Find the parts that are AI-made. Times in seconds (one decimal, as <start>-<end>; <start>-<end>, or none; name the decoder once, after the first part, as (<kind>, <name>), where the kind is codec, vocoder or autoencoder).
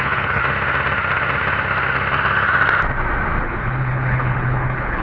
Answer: 0.0-0.4 (codec, HILCodec); 3.4-5.0